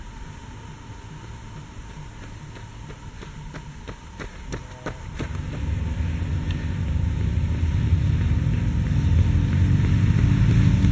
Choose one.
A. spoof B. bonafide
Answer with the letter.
B